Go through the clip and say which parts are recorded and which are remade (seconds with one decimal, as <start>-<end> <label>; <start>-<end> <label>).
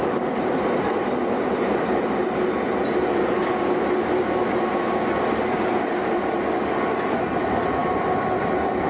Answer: 0.0-8.9 recorded